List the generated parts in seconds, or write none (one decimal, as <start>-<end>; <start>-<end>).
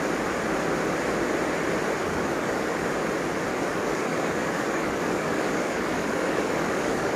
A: 2.0-2.9; 3.5-7.2